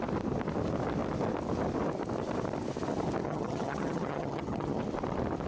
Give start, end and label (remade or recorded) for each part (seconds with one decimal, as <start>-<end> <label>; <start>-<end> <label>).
0.0-3.2 recorded; 3.2-4.8 remade; 4.8-5.5 recorded